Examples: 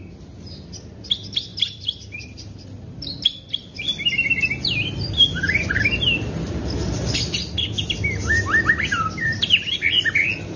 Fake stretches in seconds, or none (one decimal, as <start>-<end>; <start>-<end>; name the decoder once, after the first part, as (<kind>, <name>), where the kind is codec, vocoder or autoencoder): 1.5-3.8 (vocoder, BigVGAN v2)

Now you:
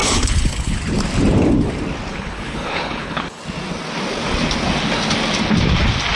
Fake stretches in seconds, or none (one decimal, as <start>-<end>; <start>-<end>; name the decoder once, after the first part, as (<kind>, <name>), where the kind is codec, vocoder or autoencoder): 0.0-0.8 (codec, HILCodec); 2.1-3.4

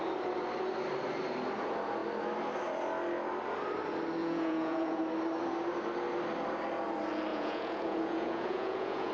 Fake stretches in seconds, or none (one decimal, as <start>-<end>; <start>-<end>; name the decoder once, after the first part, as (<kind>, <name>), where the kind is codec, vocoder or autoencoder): 4.2-5.0 (vocoder, Vocos); 7.3-9.1